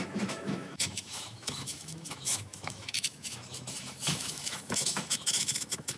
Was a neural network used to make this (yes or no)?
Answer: yes